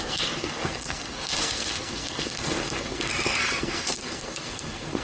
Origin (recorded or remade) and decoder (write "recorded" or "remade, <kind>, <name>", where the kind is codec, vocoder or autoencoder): remade, codec, SNAC